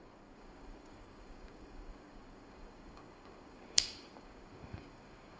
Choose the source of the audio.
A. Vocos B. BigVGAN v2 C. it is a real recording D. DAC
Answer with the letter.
D